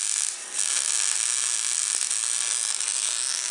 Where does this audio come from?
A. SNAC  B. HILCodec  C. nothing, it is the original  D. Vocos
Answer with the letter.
C